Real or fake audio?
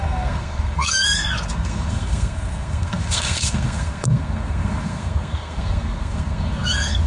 fake